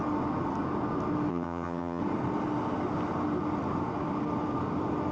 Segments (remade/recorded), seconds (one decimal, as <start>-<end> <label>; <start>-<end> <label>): 0.0-1.3 recorded; 1.3-2.0 remade; 2.0-5.1 recorded